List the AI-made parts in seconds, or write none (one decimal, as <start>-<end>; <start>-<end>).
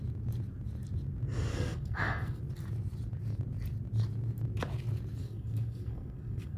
1.5-2.4; 5.2-6.6